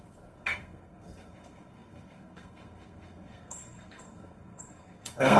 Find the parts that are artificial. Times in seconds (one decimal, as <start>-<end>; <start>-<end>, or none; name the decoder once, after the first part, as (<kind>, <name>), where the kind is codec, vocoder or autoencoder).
0.0-5.4 (codec, SNAC)

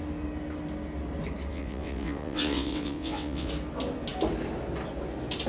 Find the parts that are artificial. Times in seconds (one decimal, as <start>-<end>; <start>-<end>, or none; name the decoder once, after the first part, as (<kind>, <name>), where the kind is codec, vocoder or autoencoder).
1.5-3.5 (vocoder, WaveNeXt)

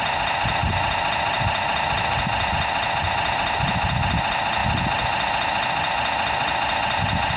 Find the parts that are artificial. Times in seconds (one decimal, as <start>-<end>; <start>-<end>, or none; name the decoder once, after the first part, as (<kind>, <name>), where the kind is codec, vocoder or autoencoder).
none

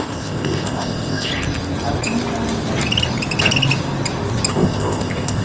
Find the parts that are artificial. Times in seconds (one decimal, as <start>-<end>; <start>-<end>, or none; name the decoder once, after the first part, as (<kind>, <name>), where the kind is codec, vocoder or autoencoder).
0.0-1.3 (codec, ZipCodec); 4.5-5.4

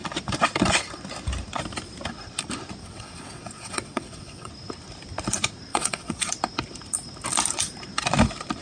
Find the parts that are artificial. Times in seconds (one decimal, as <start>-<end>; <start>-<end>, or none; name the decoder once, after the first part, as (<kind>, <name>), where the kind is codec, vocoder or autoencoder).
2.8-4.5 (vocoder, WaveNeXt); 5.7-6.3

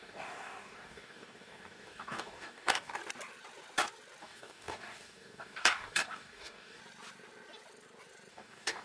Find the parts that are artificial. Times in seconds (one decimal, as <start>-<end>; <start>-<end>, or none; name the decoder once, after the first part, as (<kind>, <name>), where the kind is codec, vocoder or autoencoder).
0.0-3.0 (codec, DAC); 4.2-6.8; 8.3-8.8

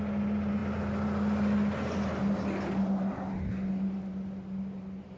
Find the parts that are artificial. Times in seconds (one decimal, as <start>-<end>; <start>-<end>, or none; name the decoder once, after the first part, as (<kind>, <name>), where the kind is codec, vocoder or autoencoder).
none

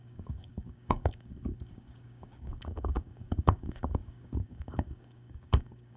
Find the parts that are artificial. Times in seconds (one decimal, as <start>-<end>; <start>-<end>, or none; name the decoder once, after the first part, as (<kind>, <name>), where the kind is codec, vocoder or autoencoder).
0.0-6.0 (codec, DAC)